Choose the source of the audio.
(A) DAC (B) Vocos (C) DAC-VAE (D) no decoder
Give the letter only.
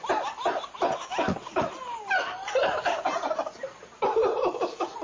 D